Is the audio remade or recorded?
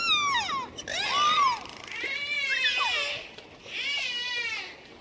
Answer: recorded